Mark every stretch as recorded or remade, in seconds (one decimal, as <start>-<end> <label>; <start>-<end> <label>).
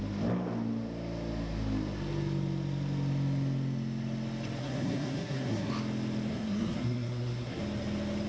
0.0-4.6 recorded; 4.6-5.7 remade; 5.7-6.3 recorded; 6.3-7.6 remade; 7.6-8.3 recorded